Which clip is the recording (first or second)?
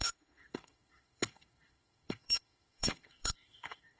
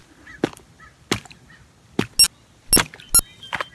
second